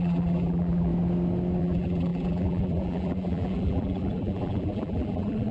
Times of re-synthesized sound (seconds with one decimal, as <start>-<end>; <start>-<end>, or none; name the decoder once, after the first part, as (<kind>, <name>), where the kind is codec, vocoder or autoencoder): 0.0-0.9 (vocoder, BigVGAN v2); 1.6-5.5